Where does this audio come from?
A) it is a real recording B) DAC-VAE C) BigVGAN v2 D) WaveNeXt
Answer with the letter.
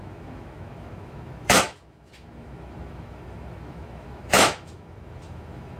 B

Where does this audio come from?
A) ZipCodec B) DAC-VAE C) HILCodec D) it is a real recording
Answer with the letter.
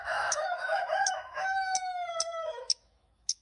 B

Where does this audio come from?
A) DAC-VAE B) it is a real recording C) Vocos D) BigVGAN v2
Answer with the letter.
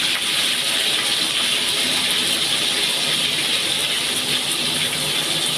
B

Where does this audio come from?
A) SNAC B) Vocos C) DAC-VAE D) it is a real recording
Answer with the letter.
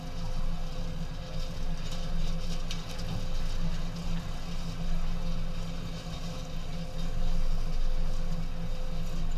D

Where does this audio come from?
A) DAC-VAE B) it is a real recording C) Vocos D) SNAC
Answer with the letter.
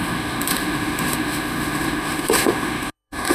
A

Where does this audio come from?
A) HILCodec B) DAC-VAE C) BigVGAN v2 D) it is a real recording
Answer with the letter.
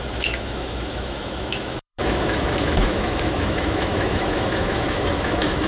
B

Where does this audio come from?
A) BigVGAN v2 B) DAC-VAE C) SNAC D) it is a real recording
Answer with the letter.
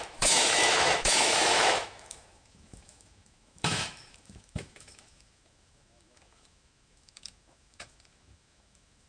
B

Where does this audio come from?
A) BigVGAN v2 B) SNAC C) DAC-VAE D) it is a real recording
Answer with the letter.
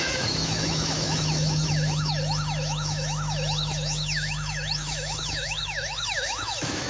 C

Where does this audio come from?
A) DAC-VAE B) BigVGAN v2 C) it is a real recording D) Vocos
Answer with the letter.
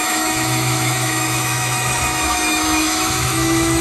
A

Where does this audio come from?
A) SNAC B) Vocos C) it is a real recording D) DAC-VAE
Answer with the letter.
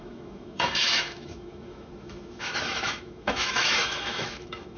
D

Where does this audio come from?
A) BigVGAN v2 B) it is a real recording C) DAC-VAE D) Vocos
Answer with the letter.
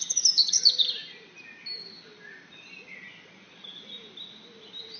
B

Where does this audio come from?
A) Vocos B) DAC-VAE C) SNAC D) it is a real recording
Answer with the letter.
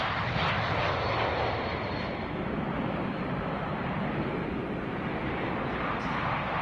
D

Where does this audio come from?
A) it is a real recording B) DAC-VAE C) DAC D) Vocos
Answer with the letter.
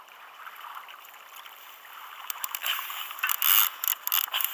A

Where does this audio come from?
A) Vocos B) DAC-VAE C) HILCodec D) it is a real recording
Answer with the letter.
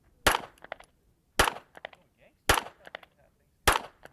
D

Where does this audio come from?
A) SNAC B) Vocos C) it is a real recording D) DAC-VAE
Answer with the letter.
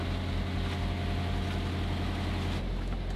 C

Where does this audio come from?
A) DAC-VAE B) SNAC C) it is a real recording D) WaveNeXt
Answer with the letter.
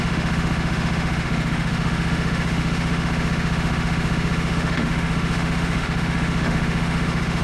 A